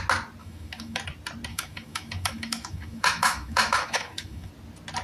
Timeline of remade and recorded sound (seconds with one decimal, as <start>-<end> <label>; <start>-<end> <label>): 0.0-0.4 recorded; 0.4-1.0 remade; 1.0-1.5 recorded; 1.5-4.5 remade; 4.5-5.0 recorded